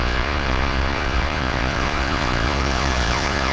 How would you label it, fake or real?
fake